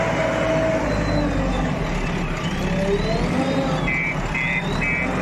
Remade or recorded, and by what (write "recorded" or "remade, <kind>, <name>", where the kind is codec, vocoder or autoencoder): recorded